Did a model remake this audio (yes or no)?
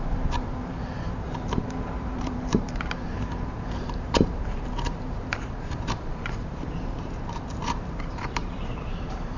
yes